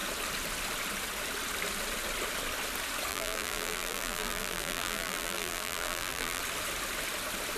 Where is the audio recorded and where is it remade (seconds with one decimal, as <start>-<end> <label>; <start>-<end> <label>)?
0.0-3.1 recorded; 3.1-6.4 remade; 6.4-7.6 recorded